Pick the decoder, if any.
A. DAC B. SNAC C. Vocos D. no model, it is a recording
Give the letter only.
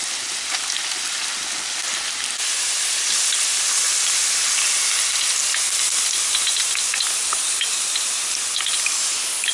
D